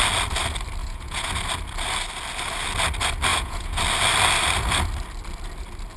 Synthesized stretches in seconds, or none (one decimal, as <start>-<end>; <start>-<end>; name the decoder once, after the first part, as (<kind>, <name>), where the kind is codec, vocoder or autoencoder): 0.8-1.3 (vocoder, Vocos); 3.3-3.8